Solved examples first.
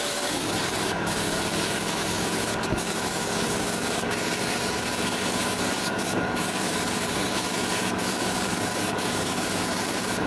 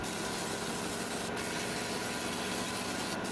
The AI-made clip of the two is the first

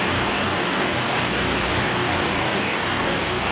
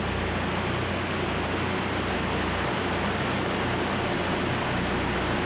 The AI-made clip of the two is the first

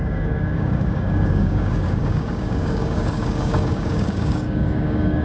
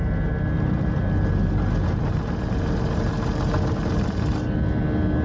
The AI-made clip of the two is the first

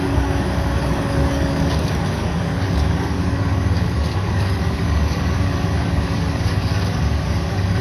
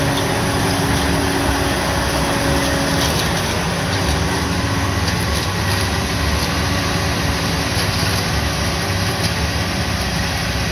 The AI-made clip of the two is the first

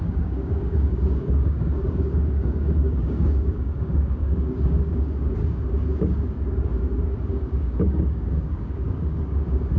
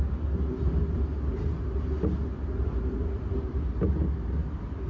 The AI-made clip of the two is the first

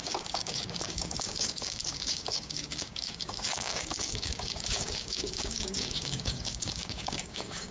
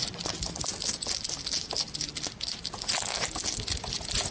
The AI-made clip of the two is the first